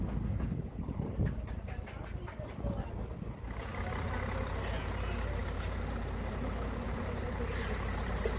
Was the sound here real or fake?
real